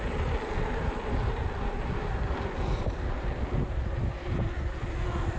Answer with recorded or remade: recorded